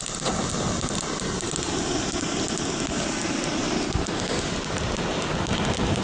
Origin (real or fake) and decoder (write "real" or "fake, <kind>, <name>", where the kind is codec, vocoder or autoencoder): real